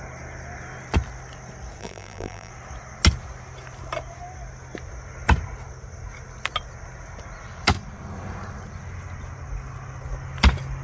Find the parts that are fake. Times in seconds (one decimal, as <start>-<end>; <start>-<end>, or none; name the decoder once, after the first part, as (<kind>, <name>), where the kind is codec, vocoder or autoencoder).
1.8-2.5 (vocoder, BigVGAN v2)